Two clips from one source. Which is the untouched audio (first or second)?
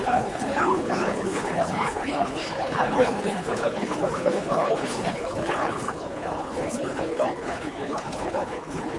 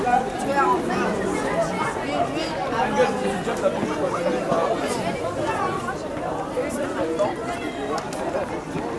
second